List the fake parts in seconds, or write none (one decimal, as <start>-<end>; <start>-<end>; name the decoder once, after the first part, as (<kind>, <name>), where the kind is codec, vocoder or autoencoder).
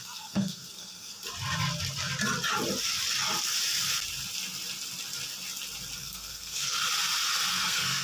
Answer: 0.0-1.2 (codec, SNAC); 6.0-6.8; 7.5-8.0